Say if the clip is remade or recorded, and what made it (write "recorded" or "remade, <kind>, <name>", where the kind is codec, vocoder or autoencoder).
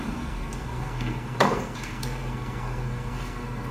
remade, codec, SNAC